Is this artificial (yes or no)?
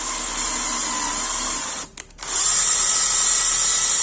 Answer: no